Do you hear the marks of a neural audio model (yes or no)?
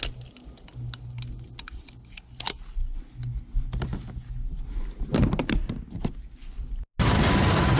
no